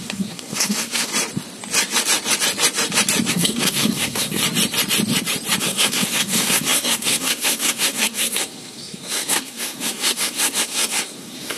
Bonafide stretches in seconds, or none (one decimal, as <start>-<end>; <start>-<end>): 1.1-3.3; 4.4-5.6